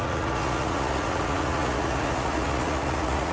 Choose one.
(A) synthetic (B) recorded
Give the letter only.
A